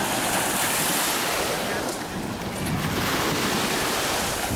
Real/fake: real